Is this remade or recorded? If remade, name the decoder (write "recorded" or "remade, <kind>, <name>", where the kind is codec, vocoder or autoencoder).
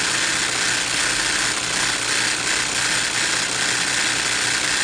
recorded